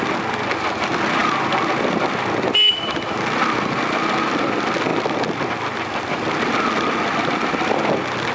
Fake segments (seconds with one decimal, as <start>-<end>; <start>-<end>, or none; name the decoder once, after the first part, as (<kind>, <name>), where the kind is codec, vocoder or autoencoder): 1.2-2.7 (vocoder, BigVGAN v2); 4.9-5.5